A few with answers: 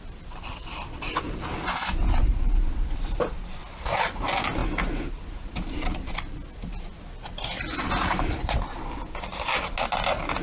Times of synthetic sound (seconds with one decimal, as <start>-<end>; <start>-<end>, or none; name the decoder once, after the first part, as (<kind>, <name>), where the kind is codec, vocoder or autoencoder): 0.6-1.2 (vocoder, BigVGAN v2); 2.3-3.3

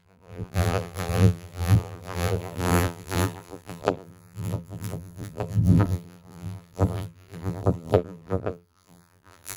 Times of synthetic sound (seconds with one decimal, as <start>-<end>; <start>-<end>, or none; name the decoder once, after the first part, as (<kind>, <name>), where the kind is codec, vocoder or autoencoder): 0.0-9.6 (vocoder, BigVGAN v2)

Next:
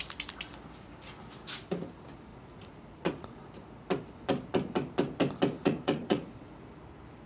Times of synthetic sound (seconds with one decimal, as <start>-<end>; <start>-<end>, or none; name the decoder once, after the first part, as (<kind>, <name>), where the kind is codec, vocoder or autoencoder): 2.3-3.4 (vocoder, Vocos); 5.6-6.6

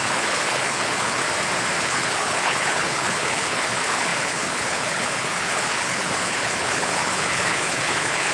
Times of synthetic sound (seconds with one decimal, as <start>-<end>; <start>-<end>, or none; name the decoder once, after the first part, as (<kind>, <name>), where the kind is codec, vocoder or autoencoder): 0.0-1.2 (codec, HILCodec); 1.8-8.3

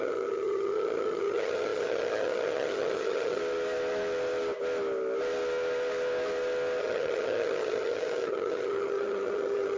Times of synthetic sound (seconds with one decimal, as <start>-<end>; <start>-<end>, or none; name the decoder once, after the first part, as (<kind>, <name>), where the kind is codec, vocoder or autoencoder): 0.0-3.4 (vocoder, HiFi-GAN); 6.8-9.8

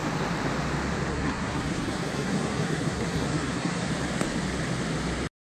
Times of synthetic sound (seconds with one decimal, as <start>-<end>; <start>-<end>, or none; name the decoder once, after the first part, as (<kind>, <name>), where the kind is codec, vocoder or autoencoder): 1.1-3.9 (codec, SNAC)